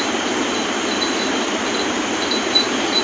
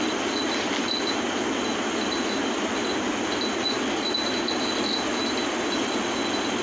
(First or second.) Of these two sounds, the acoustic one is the second